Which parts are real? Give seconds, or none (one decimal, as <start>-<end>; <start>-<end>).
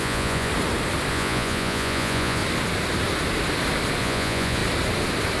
0.5-1.1; 2.4-4.0; 4.6-5.4